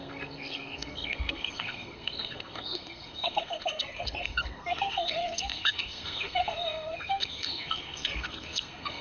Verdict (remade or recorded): remade